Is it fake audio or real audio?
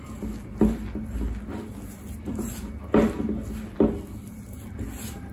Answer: real